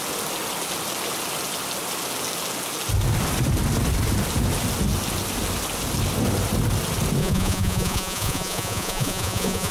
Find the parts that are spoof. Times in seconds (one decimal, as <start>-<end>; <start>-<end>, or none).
7.2-9.7